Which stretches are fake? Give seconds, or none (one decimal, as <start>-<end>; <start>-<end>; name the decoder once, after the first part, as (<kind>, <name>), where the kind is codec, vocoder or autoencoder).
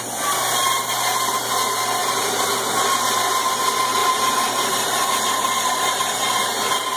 0.6-1.2 (vocoder, BigVGAN v2); 2.0-2.5; 4.0-6.1